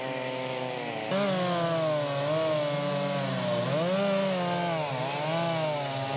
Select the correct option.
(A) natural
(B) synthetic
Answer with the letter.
A